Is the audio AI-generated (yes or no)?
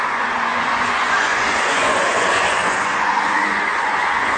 yes